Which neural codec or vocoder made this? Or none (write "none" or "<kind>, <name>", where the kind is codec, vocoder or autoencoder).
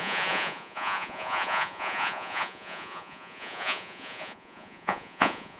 vocoder, Vocos